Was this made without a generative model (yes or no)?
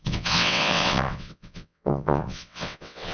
no